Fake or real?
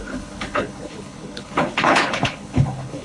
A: fake